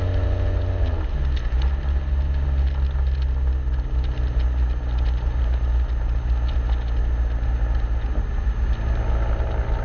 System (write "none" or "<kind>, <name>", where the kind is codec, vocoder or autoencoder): none